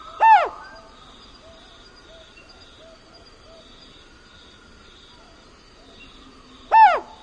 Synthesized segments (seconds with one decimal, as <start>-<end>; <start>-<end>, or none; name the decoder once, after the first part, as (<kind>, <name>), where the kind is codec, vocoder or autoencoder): none